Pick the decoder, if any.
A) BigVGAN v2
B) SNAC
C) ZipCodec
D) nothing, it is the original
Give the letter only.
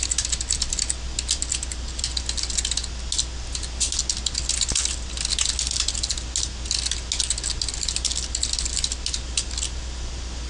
D